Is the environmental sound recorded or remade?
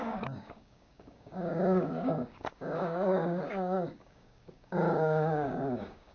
remade